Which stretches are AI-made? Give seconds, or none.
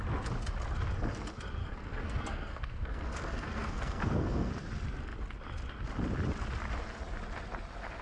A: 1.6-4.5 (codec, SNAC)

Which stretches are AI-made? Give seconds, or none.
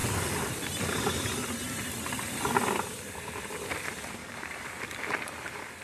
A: 4.2-4.7 (codec, DAC)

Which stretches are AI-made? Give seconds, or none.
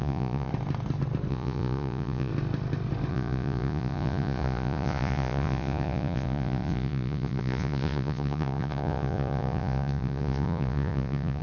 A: 0.0-0.5 (vocoder, Vocos); 1.3-2.3; 3.1-11.4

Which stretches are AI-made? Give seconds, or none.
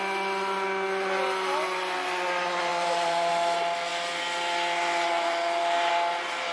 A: 2.7-3.3 (vocoder, BigVGAN v2)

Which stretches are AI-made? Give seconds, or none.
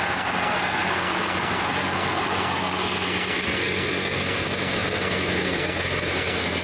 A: 0.0-6.6 (codec, SNAC)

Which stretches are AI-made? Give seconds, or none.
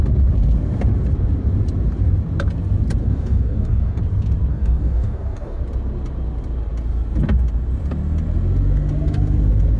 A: 3.0-4.0 (codec, DAC); 4.5-5.6